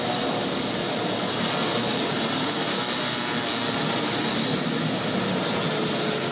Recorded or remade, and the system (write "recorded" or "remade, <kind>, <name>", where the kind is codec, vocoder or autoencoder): recorded